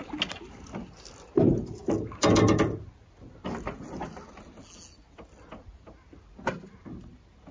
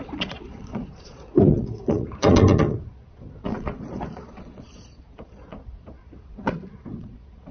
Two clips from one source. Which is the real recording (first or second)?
first